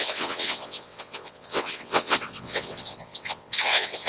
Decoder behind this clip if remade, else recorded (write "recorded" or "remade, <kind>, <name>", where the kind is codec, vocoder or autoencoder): remade, vocoder, WaveNeXt